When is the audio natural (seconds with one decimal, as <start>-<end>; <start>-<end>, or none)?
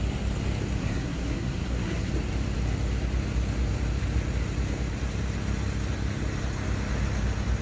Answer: 0.0-0.8; 2.1-7.6